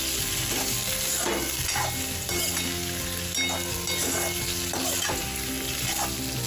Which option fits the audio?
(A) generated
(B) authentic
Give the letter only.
B